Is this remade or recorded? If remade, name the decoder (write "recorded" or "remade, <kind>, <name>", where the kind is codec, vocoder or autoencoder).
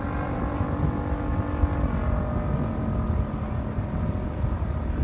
recorded